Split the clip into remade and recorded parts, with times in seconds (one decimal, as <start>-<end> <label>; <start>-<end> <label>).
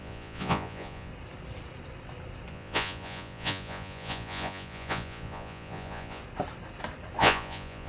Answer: 0.0-1.1 remade; 1.1-2.5 recorded; 2.5-6.2 remade; 6.2-7.2 recorded; 7.2-7.9 remade